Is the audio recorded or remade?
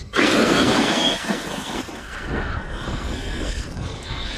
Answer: remade